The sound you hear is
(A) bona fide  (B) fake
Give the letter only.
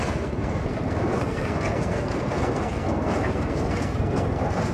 B